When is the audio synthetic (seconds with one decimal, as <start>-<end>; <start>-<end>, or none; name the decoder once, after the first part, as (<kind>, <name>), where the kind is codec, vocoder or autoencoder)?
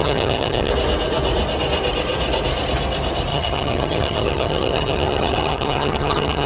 0.0-0.7 (vocoder, HiFi-GAN); 3.3-6.5